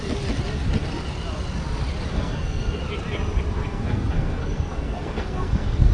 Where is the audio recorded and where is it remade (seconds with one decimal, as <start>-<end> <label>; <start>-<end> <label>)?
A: 0.0-2.1 recorded; 2.1-2.8 remade; 2.8-3.6 recorded; 3.6-5.9 remade